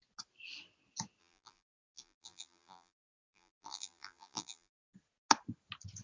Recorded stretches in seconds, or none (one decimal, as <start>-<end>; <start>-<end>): 0.0-1.2; 4.8-6.0